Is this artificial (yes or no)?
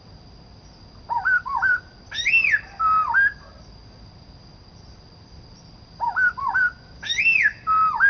no